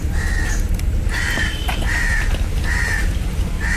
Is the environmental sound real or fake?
real